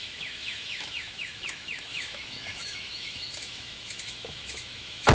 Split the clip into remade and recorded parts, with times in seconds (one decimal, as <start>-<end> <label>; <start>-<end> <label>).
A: 0.0-5.1 remade